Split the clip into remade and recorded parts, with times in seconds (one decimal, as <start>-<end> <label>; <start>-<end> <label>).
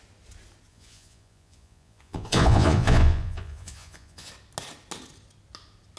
0.0-0.7 recorded; 0.7-4.3 remade; 4.3-6.0 recorded